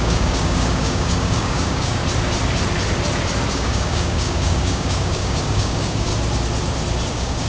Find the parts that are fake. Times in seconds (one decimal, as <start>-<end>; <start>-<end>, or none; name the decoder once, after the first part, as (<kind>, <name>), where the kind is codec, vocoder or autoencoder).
0.0-2.0 (codec, DAC); 3.5-6.1; 7.1-7.5